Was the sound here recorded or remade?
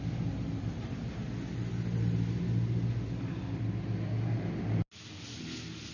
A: recorded